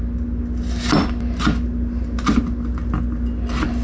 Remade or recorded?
recorded